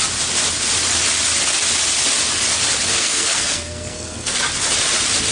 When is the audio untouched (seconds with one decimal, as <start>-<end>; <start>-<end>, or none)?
0.0-2.9; 4.4-5.3